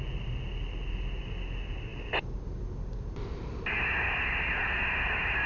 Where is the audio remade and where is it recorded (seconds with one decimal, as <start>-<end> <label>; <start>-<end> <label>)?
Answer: 0.0-5.5 recorded